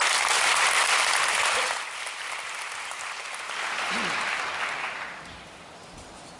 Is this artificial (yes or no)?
no